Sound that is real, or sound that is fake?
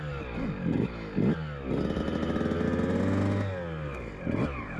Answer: real